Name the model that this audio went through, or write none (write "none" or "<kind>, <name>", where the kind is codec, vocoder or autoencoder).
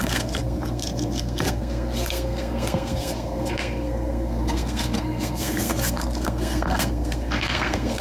codec, SNAC